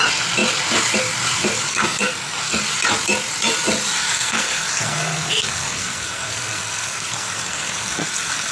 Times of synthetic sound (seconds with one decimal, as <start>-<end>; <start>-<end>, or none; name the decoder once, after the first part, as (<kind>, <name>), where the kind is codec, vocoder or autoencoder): 1.7-2.6 (codec, SNAC); 4.0-8.5